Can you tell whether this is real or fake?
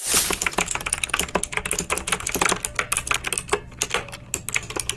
real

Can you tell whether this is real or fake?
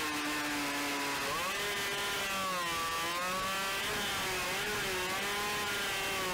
real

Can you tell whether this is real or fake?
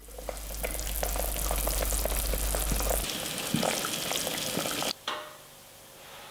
real